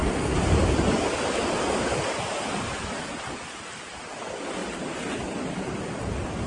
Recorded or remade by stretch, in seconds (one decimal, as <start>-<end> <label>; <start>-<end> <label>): 0.0-4.6 recorded; 4.6-6.1 remade; 6.1-6.5 recorded